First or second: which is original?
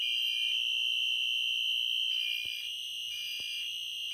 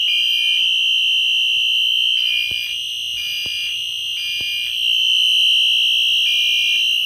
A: second